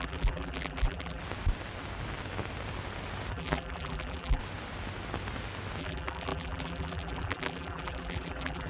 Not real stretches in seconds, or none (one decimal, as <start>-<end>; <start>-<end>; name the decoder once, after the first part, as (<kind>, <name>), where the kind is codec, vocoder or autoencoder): 0.0-1.2 (vocoder, BigVGAN v2); 3.3-4.4; 5.8-8.7